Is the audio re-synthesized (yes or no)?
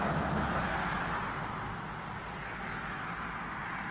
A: no